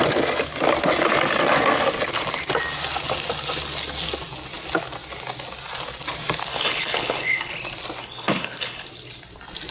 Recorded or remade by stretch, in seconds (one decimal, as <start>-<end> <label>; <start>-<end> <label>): 0.0-6.5 recorded; 6.5-7.5 remade; 7.5-8.0 recorded; 8.0-8.9 remade; 8.9-9.7 recorded